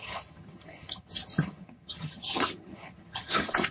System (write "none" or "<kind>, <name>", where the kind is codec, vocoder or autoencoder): vocoder, HiFi-GAN